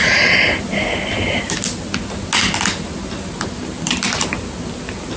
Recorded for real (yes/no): yes